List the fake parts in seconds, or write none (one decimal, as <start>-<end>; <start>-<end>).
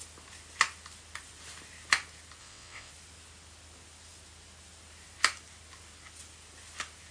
2.4-2.9